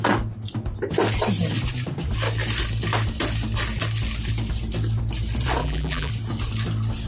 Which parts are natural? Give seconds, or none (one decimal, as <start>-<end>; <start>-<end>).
0.0-5.6; 6.1-7.1